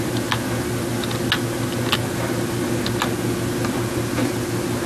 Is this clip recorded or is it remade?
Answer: recorded